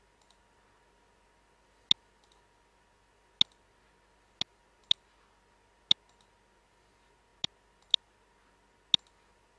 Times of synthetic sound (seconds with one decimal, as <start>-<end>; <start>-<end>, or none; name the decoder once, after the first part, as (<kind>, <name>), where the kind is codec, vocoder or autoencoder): none